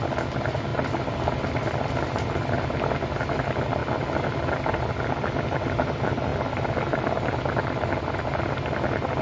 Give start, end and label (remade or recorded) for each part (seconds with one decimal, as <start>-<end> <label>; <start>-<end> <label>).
0.0-9.2 recorded